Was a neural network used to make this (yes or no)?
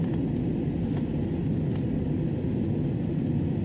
no